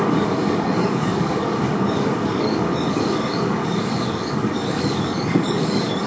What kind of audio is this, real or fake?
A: fake